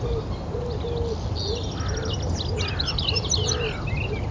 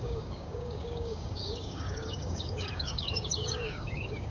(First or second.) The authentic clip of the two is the first